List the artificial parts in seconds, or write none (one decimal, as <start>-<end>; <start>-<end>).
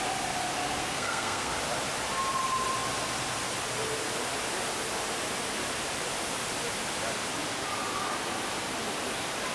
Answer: 0.8-1.5